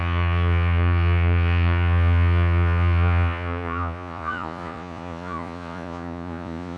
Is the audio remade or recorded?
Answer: remade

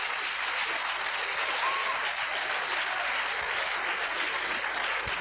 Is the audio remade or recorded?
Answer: recorded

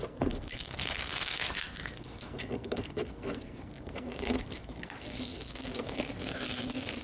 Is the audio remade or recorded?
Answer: remade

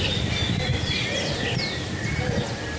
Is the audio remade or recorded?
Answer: recorded